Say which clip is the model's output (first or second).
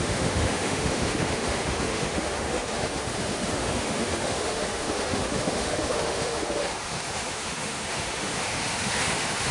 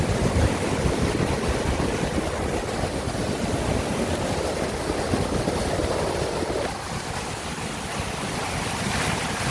first